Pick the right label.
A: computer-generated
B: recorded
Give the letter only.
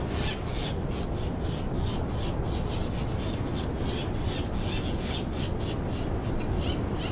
B